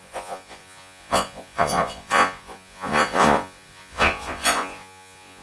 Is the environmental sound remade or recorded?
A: remade